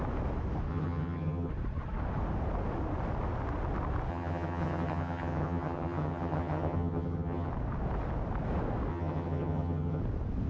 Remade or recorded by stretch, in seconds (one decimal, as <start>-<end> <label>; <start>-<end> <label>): 0.0-0.7 recorded; 0.7-1.5 remade; 1.5-4.1 recorded; 4.1-7.5 remade; 7.5-8.9 recorded; 8.9-10.0 remade; 10.0-10.5 recorded